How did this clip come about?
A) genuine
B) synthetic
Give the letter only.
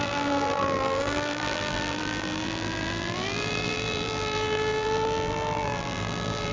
B